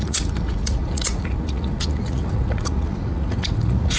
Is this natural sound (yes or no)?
no